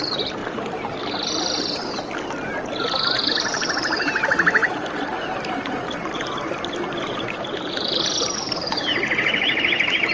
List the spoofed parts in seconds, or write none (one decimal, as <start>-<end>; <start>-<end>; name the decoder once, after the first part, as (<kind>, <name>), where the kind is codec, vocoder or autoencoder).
0.0-0.4 (vocoder, BigVGAN v2); 3.2-8.8; 9.6-10.1